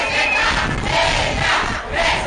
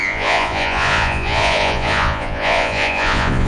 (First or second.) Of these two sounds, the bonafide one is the first